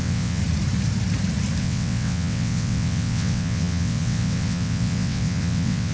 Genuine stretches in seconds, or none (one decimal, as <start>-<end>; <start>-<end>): 0.4-1.6